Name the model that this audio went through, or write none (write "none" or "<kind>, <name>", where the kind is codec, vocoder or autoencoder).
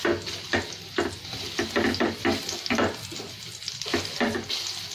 none